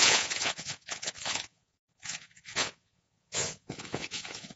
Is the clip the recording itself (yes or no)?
no